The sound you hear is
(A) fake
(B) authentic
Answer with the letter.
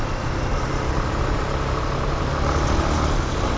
B